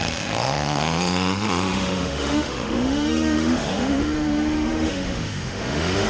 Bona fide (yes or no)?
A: no